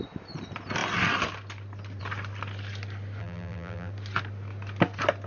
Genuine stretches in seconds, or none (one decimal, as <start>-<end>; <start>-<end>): 0.0-3.2; 3.9-5.3